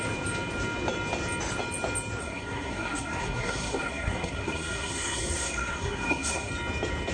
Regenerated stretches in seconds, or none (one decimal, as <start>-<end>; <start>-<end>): 2.2-6.5